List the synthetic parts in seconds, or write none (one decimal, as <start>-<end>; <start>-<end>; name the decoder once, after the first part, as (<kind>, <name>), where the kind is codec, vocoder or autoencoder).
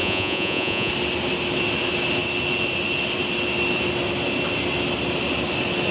0.0-0.9 (vocoder, Vocos)